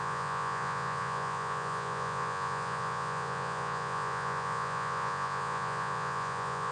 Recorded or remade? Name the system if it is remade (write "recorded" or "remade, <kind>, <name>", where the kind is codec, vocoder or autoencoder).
remade, vocoder, Vocos